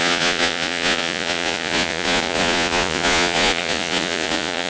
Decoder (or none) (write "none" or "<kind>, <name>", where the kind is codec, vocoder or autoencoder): vocoder, Vocos